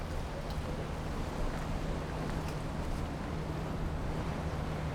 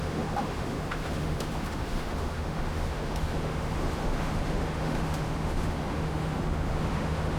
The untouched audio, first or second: first